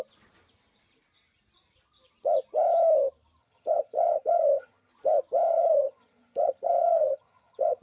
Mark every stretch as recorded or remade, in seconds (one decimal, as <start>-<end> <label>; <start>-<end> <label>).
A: 0.0-3.4 recorded; 3.4-4.9 remade; 4.9-5.5 recorded; 5.5-7.8 remade